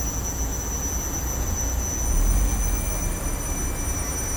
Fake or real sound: real